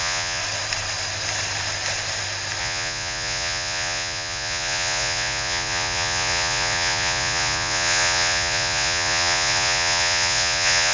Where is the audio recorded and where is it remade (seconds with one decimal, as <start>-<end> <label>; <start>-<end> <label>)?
0.0-0.4 remade; 0.4-2.6 recorded; 2.6-10.9 remade